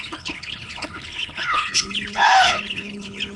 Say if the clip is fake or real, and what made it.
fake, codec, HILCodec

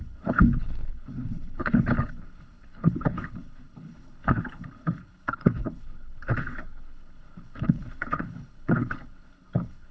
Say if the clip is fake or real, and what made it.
fake, codec, HILCodec